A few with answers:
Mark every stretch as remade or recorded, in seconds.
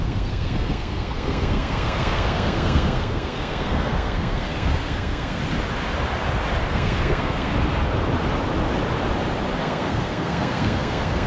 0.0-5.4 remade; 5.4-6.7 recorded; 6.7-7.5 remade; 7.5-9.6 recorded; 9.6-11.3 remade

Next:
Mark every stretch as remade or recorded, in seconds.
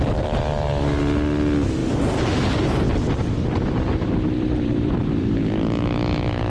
0.0-1.8 recorded; 1.8-5.5 remade; 5.5-6.5 recorded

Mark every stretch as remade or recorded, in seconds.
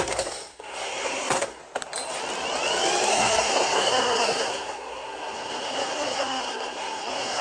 0.0-1.6 remade; 1.6-3.1 recorded; 3.1-7.4 remade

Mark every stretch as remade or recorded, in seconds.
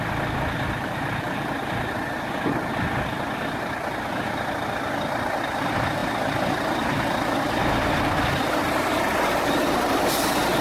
0.0-10.6 recorded